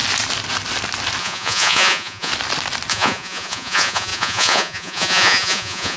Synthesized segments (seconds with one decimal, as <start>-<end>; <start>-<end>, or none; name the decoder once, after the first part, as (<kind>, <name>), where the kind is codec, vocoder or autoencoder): 1.2-2.3 (vocoder, Vocos); 2.9-6.0